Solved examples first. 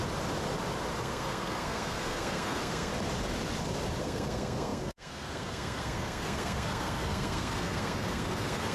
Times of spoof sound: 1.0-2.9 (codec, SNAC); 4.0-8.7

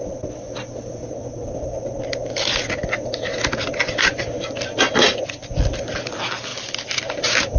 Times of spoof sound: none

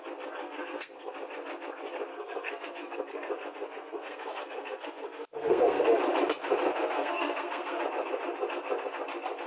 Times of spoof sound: 0.4-1.1 (codec, SNAC); 2.1-5.8; 6.7-7.8

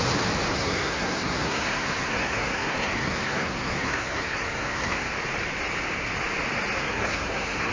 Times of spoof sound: 0.5-5.1 (codec, SNAC); 6.8-7.7

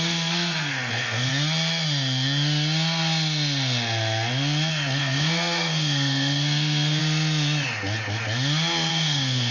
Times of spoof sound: 0.0-1.3 (codec, SNAC); 5.0-7.0; 8.9-9.5